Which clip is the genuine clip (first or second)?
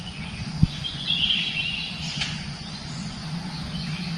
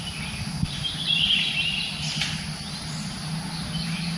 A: second